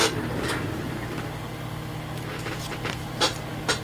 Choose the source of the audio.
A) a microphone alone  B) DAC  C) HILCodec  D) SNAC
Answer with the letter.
A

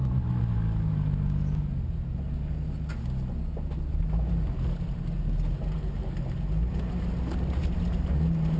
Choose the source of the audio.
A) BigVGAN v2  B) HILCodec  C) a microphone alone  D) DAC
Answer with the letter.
C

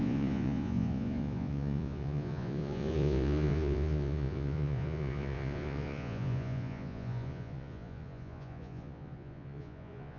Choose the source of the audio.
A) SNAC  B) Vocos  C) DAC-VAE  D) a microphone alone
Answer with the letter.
B